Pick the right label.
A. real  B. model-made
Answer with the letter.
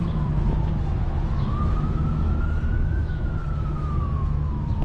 B